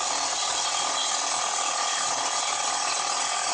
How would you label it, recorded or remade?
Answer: recorded